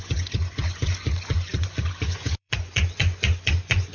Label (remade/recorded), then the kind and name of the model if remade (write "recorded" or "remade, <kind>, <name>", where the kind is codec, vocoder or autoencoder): remade, vocoder, Vocos